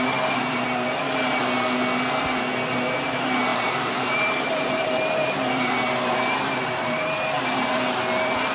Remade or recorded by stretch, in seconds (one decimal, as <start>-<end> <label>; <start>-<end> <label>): 0.0-1.4 remade; 1.4-3.0 recorded; 3.0-8.5 remade